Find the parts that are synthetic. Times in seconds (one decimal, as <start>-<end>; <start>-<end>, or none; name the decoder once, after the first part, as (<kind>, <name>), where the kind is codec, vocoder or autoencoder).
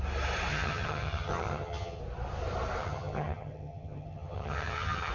0.5-2.0 (vocoder, HiFi-GAN); 2.8-5.1